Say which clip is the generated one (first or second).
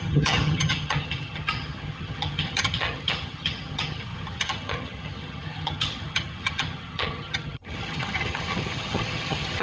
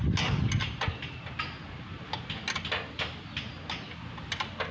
first